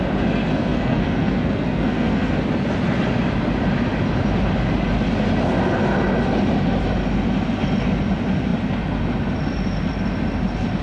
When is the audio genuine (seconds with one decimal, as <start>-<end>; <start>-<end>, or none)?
0.0-0.5; 2.3-10.8